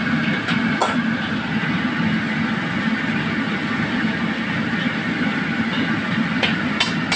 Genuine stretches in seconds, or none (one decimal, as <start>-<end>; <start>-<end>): 0.0-7.2